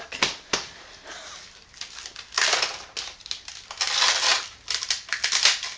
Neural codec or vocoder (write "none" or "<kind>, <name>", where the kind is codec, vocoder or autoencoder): none